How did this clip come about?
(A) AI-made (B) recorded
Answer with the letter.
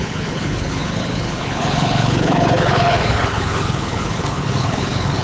A